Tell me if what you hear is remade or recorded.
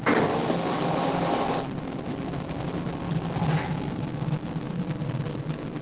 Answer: recorded